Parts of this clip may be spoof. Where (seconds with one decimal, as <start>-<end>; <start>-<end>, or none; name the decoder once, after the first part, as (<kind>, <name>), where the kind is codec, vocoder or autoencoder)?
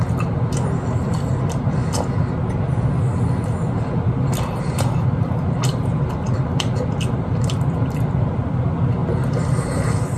none